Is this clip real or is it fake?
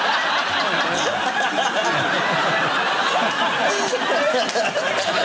real